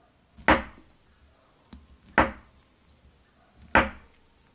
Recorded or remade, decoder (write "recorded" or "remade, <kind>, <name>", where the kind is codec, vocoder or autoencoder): recorded